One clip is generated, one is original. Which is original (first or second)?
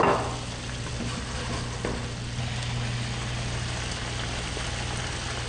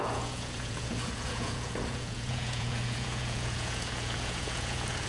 first